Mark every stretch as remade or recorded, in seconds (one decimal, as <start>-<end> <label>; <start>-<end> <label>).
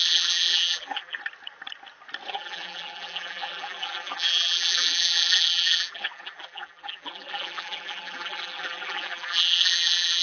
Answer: 0.0-1.2 remade; 1.2-2.3 recorded; 2.3-10.2 remade